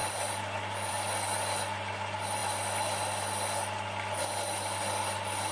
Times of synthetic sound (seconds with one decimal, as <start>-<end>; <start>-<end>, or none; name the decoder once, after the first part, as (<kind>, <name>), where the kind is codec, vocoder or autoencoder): 0.0-0.9 (vocoder, BigVGAN v2)